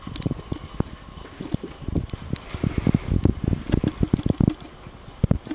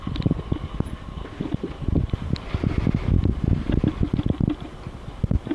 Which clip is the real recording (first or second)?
first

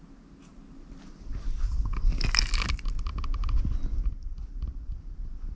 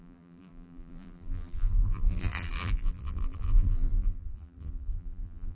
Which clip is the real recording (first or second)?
first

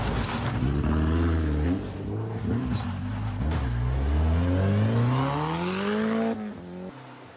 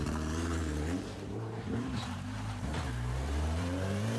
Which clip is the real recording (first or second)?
first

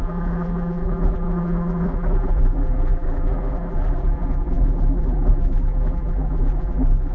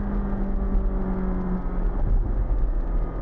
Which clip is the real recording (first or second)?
second